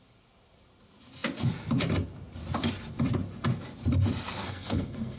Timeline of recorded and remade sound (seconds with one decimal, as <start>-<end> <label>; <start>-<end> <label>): 0.0-4.4 recorded; 4.4-5.2 remade